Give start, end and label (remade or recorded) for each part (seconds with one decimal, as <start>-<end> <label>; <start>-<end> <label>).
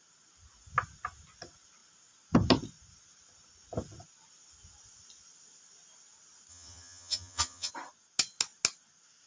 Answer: 0.0-6.5 recorded; 6.5-7.7 remade; 7.7-9.3 recorded